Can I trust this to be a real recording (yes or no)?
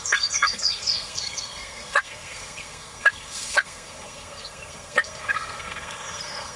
no